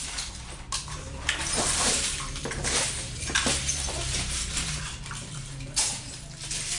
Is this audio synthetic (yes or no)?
yes